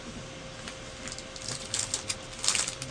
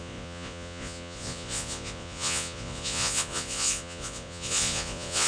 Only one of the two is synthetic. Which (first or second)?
second